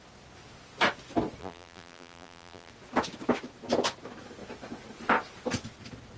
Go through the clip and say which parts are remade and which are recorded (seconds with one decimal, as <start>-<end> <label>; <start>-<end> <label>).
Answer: 0.0-1.4 recorded; 1.4-2.7 remade; 2.7-6.2 recorded